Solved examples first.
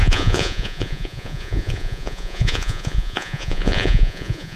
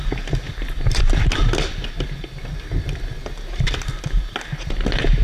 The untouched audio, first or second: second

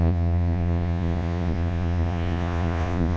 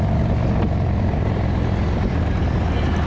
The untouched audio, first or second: second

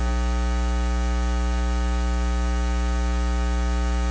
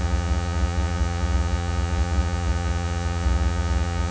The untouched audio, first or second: first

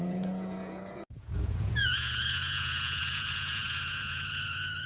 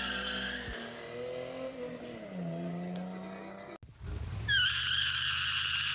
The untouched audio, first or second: second